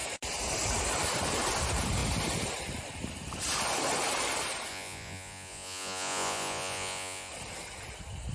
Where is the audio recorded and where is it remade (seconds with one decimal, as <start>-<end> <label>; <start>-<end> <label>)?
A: 0.0-4.7 recorded; 4.7-7.3 remade; 7.3-8.3 recorded